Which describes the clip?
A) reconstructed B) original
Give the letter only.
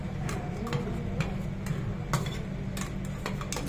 B